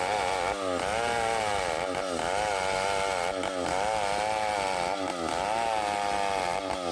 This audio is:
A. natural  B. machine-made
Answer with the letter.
A